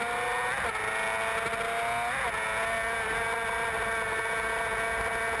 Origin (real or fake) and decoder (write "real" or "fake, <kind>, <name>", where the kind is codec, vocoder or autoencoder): real